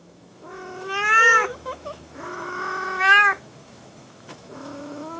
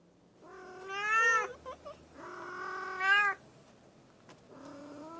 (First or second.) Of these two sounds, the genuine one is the second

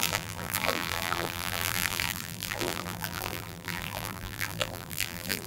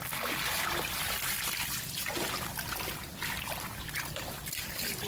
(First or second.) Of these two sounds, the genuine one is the second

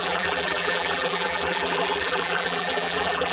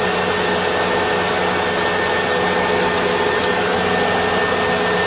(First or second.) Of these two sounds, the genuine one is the second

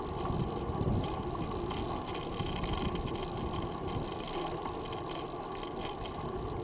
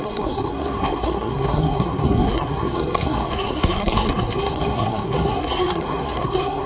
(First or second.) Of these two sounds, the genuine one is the first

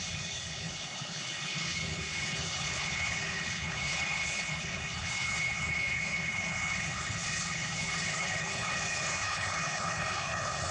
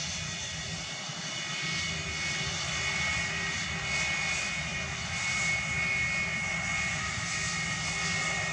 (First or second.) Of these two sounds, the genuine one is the second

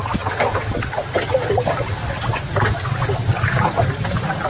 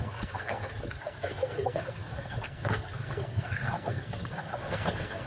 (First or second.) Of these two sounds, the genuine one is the first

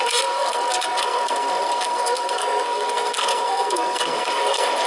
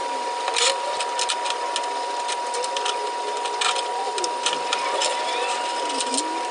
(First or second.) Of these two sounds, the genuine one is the second